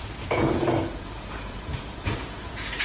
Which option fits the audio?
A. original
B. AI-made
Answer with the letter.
B